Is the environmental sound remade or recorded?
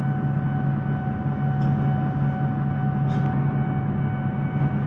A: recorded